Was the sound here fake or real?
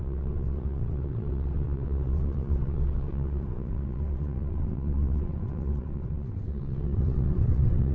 fake